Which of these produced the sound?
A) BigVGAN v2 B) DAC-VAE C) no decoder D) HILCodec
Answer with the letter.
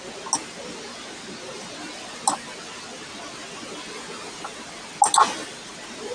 C